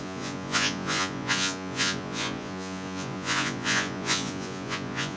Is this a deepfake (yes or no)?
yes